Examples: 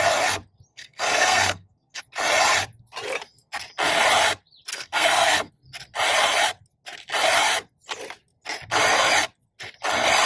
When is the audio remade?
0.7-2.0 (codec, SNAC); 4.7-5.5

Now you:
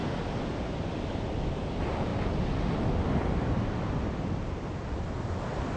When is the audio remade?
none

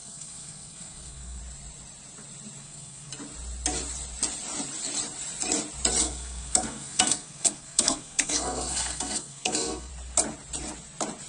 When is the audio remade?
0.0-1.4 (codec, SNAC); 2.6-3.1; 6.0-9.9

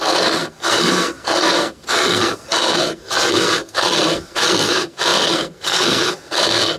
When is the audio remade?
0.0-6.8 (codec, SNAC)

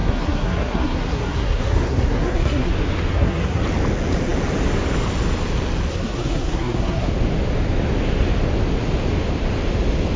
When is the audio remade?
0.0-2.7 (codec, SNAC); 3.1-3.6; 5.9-7.1

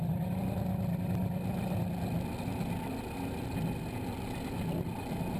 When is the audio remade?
none

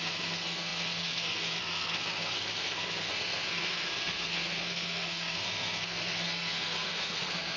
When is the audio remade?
0.0-7.6 (codec, SNAC)

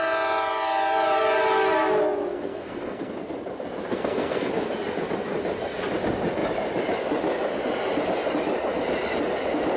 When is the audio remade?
2.3-3.1 (codec, SNAC); 3.9-4.5